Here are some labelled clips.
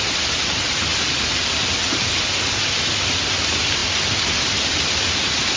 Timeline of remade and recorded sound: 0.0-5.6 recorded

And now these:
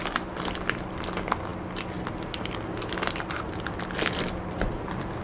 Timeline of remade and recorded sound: 0.0-5.2 recorded

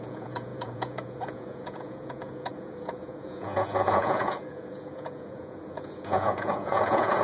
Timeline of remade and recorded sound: 0.0-7.2 remade

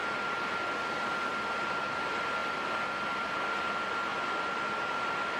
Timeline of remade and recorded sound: 0.0-0.5 remade; 0.5-4.1 recorded; 4.1-5.4 remade

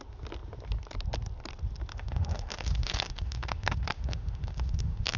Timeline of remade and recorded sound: 0.0-1.9 recorded; 1.9-5.2 remade

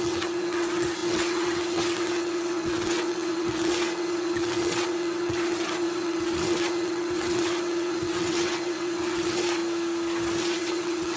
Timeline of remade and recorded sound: 0.0-9.6 remade; 9.6-10.4 recorded; 10.4-11.2 remade